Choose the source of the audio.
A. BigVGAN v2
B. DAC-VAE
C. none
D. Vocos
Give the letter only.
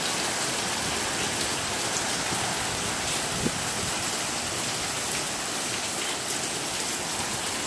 C